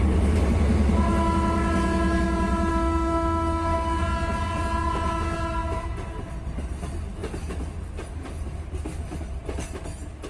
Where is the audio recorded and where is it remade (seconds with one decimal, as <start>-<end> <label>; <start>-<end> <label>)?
0.0-2.7 recorded; 2.7-4.0 remade; 4.0-10.3 recorded

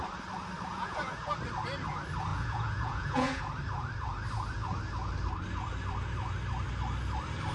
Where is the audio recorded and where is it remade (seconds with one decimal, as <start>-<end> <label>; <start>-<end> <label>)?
0.0-0.7 recorded; 0.7-1.3 remade; 1.3-2.3 recorded; 2.3-3.4 remade; 3.4-7.5 recorded

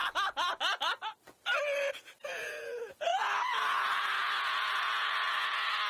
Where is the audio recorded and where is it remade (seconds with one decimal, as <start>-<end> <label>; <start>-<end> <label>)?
0.0-1.9 recorded; 1.9-5.9 remade

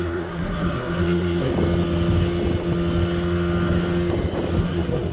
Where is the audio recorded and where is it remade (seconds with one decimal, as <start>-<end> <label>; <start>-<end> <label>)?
0.0-1.5 remade; 1.5-4.6 recorded; 4.6-5.1 remade

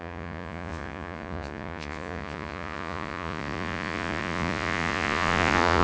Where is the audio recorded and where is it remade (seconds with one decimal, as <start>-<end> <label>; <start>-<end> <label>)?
0.0-5.8 remade

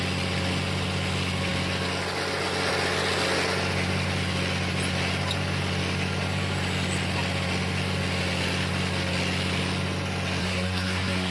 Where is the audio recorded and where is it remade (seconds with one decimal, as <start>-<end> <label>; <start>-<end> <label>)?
0.0-10.4 recorded; 10.4-11.3 remade